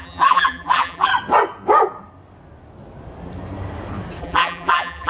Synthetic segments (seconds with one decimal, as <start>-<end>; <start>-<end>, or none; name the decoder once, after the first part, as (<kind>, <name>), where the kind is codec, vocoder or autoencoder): 0.0-1.1 (vocoder, BigVGAN v2); 4.2-5.1